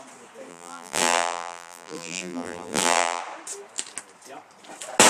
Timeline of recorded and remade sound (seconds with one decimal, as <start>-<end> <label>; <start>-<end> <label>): 0.0-0.5 recorded; 0.5-3.2 remade; 3.2-5.1 recorded